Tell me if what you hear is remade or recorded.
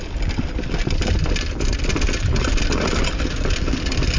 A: recorded